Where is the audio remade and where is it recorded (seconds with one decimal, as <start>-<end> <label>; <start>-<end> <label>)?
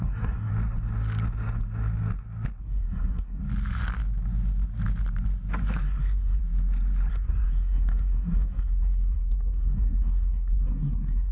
0.0-0.5 remade; 0.5-2.6 recorded; 2.6-3.4 remade; 3.4-5.8 recorded; 5.8-6.4 remade; 6.4-7.1 recorded; 7.1-11.3 remade